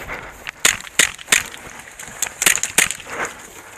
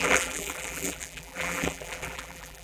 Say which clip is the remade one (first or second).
second